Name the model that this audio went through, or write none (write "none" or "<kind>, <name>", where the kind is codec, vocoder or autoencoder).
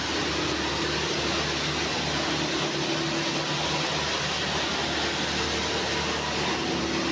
none